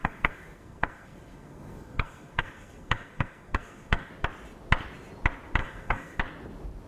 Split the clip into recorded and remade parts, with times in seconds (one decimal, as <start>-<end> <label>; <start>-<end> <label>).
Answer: 0.0-4.1 remade; 4.1-5.6 recorded; 5.6-6.2 remade; 6.2-6.9 recorded